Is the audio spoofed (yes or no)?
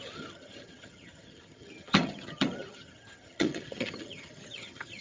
yes